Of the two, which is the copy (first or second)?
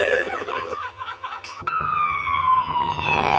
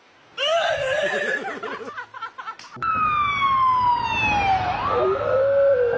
first